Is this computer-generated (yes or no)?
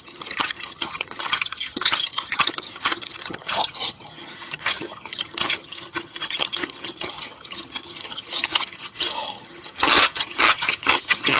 yes